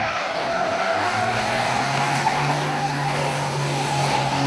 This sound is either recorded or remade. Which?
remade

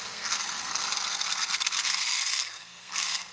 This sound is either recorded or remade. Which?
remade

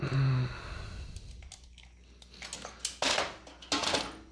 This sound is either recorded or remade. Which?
recorded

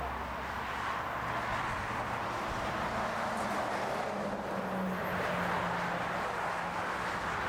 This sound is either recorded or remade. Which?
recorded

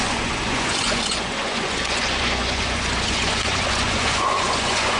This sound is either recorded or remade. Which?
remade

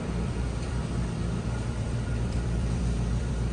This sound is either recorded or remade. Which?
remade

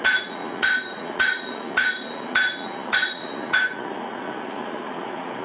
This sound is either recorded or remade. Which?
remade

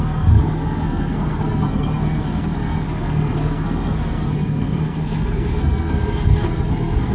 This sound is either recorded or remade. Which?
remade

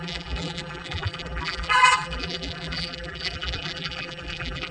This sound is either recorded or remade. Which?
remade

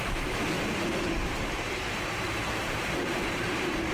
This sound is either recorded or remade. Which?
remade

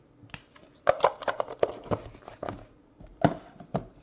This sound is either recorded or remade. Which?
recorded